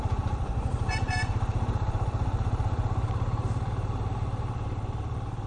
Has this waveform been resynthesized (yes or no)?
yes